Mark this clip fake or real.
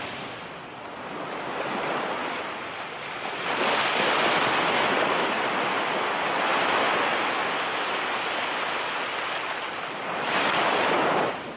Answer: real